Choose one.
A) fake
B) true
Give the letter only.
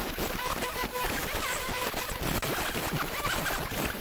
B